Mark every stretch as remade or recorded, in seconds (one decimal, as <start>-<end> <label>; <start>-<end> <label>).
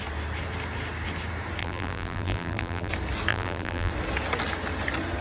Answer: 0.0-1.6 recorded; 1.6-2.9 remade; 2.9-3.3 recorded; 3.3-3.9 remade; 3.9-5.2 recorded